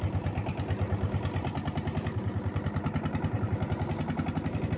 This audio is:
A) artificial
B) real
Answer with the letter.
B